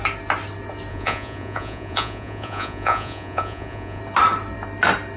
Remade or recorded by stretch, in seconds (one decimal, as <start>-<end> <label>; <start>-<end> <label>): 0.0-0.9 recorded; 0.9-4.0 remade; 4.0-5.2 recorded